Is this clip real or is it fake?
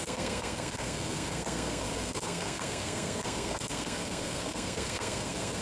fake